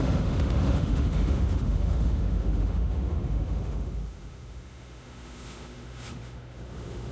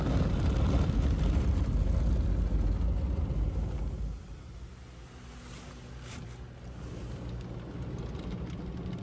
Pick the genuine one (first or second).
second